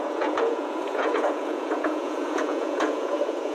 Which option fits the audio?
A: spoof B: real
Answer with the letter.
A